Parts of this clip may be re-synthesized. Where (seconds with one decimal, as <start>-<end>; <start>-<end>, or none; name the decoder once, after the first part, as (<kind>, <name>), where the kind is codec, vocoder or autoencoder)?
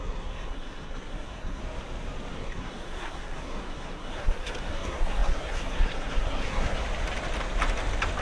0.0-1.6 (codec, SNAC); 2.3-6.8